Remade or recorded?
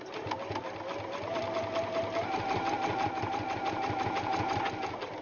recorded